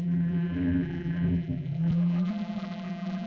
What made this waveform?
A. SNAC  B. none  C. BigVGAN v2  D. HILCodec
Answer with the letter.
C